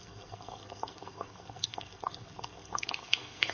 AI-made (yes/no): yes